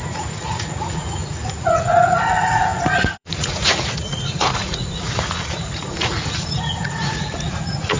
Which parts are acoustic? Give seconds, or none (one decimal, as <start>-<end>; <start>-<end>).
none